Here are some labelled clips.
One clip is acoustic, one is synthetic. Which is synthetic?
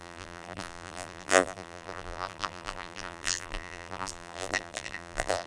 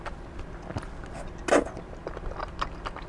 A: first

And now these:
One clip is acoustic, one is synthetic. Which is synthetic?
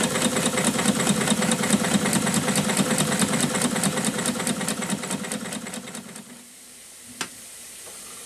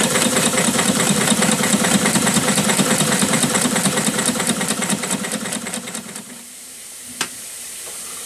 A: second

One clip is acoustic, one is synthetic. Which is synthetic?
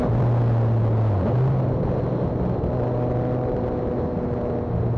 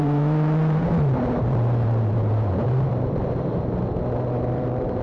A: second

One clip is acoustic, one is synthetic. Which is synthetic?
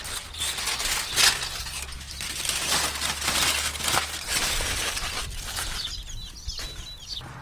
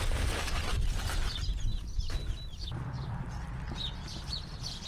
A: second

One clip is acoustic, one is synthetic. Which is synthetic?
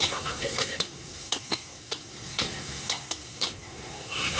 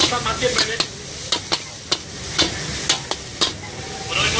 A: first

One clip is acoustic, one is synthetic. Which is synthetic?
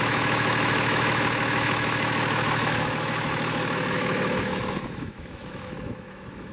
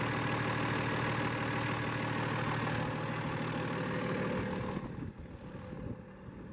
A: first